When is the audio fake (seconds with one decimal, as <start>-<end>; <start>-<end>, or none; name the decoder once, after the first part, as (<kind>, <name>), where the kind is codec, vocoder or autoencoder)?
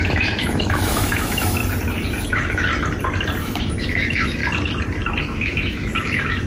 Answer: 0.0-1.6 (autoencoder, DAC-VAE); 2.3-2.7; 3.4-4.4; 5.2-6.5